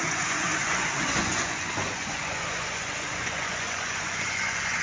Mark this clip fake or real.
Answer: fake